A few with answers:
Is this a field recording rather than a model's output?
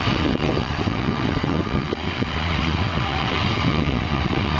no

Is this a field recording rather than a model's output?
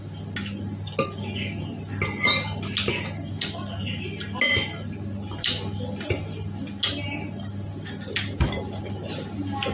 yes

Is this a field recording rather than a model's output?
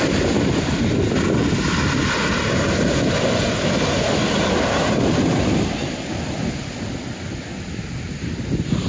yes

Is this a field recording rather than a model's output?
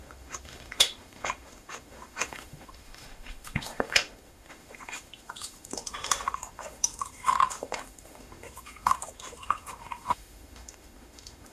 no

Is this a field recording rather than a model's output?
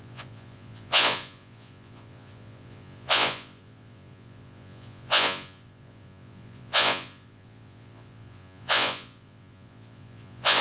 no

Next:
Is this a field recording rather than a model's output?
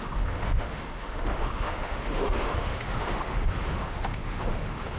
no